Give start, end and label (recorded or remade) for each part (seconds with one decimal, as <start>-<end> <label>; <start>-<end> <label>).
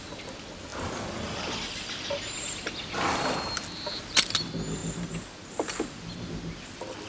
0.0-7.1 recorded